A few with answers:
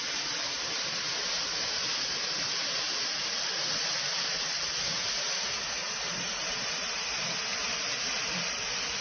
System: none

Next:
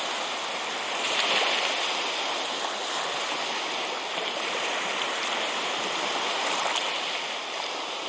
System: none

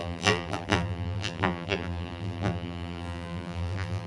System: vocoder, BigVGAN v2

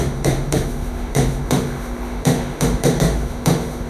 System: autoencoder, DAC-VAE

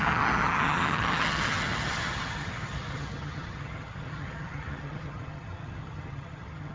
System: vocoder, HiFi-GAN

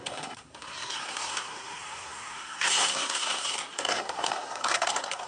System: codec, SNAC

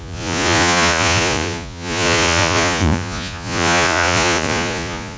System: vocoder, Vocos